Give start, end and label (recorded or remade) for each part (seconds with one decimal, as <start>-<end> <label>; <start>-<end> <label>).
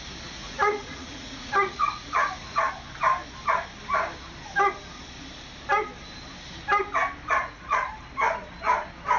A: 0.0-0.4 recorded; 0.4-2.7 remade; 2.7-7.4 recorded; 7.4-7.9 remade; 7.9-9.2 recorded